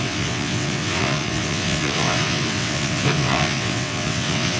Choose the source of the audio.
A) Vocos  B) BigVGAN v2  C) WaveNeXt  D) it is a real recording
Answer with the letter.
C